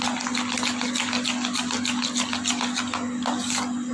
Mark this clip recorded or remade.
recorded